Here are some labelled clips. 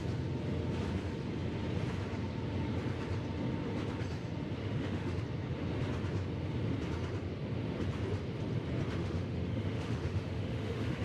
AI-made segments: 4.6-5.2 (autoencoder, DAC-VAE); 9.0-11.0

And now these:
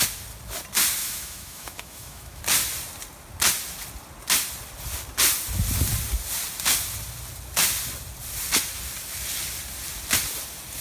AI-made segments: 1.0-2.4 (autoencoder, DAC-VAE)